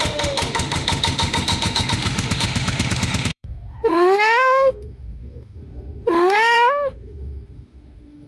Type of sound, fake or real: fake